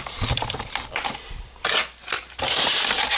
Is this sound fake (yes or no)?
yes